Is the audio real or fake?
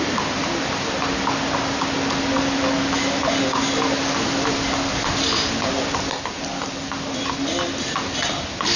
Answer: real